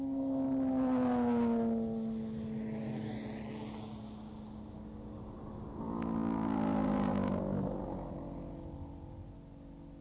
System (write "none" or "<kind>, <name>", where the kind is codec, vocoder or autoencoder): none